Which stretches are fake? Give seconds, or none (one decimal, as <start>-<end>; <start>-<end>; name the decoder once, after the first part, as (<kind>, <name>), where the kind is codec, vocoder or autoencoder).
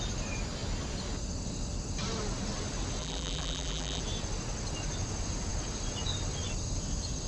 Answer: 3.0-4.0 (vocoder, BigVGAN v2)